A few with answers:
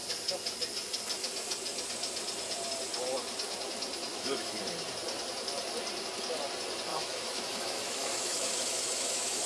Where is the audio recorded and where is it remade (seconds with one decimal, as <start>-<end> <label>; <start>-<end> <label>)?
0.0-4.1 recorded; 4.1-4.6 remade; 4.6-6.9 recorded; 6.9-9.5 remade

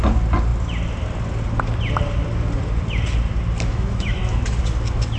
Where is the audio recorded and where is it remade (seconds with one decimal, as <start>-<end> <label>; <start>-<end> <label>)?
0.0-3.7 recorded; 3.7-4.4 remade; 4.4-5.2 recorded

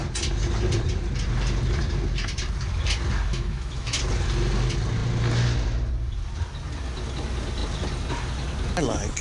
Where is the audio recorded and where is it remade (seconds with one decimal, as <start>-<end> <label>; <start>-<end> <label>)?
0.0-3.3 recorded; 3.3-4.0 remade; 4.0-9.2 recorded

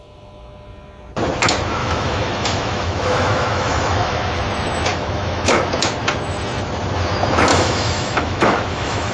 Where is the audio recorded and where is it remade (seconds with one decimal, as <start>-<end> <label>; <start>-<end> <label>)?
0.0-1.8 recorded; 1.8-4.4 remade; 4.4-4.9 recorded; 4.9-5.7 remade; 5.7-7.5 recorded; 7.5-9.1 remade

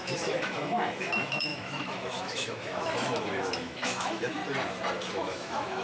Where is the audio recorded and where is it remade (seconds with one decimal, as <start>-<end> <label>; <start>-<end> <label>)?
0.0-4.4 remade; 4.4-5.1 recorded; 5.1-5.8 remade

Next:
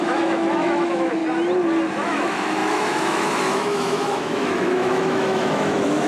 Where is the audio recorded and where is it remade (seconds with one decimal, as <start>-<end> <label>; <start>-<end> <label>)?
0.0-1.2 remade; 1.2-1.9 recorded; 1.9-6.1 remade

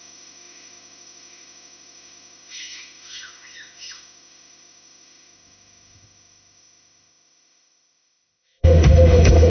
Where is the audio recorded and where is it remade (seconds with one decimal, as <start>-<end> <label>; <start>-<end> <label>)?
0.0-9.5 remade